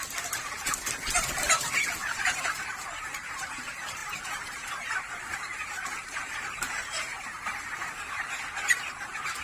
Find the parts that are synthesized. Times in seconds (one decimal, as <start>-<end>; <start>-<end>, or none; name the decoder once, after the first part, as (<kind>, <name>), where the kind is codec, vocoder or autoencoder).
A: 2.0-3.6 (vocoder, BigVGAN v2); 4.0-7.2